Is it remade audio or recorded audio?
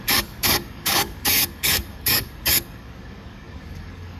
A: remade